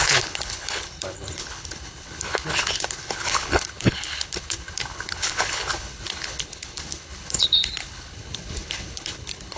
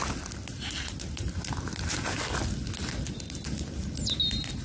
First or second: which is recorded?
second